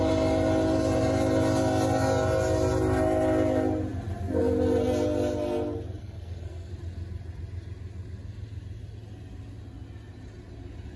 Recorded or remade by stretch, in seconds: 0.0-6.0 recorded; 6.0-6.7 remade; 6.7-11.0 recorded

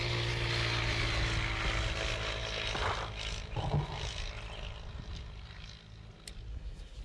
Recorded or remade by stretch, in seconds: 0.0-6.5 recorded; 6.5-7.0 remade

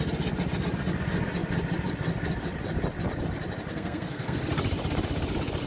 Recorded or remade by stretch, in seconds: 0.0-3.7 recorded; 3.7-4.4 remade; 4.4-5.7 recorded

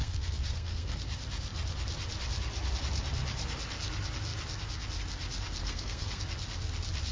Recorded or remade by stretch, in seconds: 0.0-1.0 remade; 1.0-5.6 recorded; 5.6-6.2 remade; 6.2-7.1 recorded

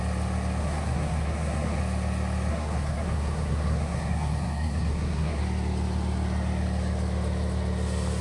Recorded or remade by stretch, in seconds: 0.0-0.6 recorded; 0.6-1.8 remade; 1.8-2.5 recorded; 2.5-5.4 remade; 5.4-8.2 recorded

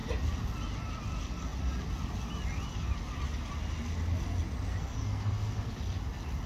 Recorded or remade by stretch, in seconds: 0.0-4.7 recorded; 4.7-5.7 remade; 5.7-6.5 recorded

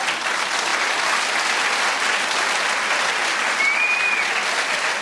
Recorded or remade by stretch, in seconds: 0.0-5.0 recorded

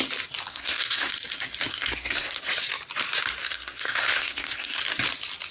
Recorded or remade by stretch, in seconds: 0.0-0.5 recorded; 0.5-1.1 remade; 1.1-1.7 recorded; 1.7-2.4 remade; 2.4-3.4 recorded; 3.4-4.8 remade; 4.8-5.5 recorded